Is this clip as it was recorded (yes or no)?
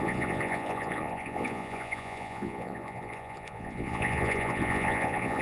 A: no